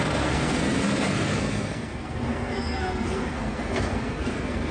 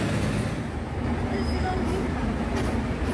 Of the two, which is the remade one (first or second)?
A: first